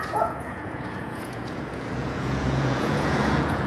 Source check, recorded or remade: remade